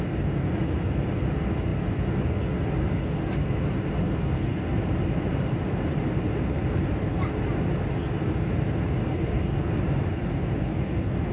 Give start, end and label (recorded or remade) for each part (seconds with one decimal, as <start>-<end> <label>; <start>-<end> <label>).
0.0-4.7 recorded; 4.7-7.1 remade; 7.1-9.1 recorded; 9.1-10.1 remade; 10.1-11.3 recorded